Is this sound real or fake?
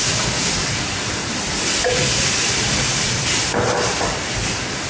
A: fake